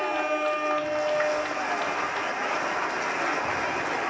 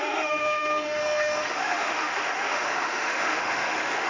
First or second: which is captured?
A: first